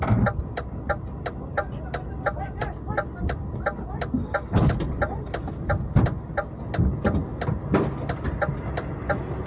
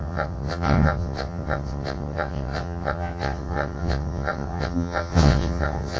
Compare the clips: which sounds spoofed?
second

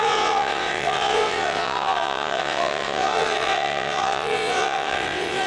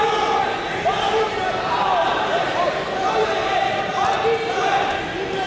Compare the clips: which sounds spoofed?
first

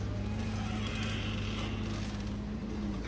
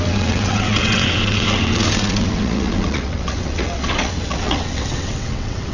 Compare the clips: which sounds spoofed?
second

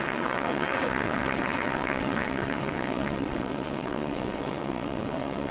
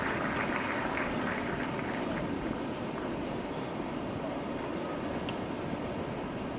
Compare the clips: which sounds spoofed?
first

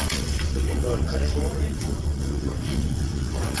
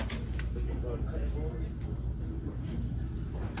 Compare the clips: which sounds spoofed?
first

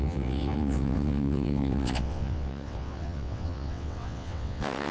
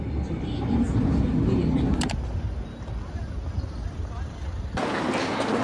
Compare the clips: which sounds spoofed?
first